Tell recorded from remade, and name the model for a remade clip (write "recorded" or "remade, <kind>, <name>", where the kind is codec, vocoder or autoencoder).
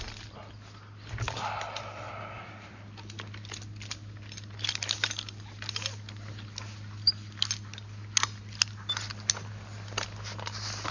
recorded